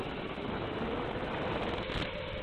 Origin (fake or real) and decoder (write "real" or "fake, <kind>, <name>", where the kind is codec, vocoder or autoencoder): real